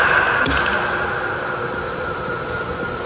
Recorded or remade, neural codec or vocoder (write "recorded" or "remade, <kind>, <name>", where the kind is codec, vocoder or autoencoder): recorded